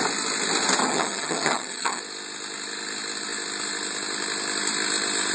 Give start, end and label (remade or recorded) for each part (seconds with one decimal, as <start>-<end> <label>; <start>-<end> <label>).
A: 0.0-0.8 recorded; 0.8-2.0 remade; 2.0-5.3 recorded